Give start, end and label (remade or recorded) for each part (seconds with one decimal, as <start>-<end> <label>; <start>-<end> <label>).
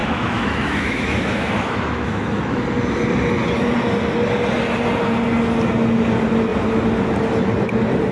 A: 0.0-2.6 remade; 2.6-8.1 recorded